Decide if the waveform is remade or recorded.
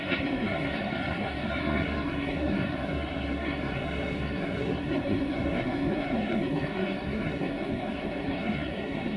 remade